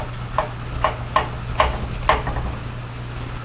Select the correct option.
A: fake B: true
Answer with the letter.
B